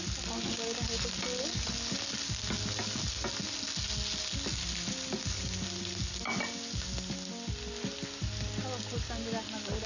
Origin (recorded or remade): recorded